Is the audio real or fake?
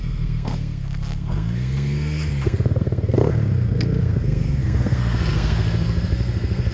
fake